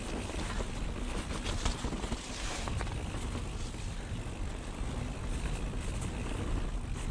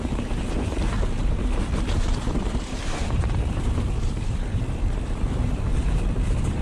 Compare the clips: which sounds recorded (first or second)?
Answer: first